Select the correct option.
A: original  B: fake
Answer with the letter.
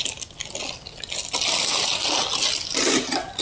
A